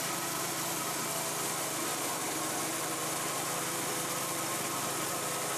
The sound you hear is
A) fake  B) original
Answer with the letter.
B